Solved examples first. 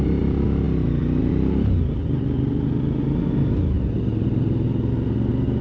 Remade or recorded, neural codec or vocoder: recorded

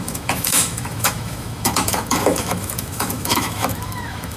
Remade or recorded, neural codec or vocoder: remade, autoencoder, DAC-VAE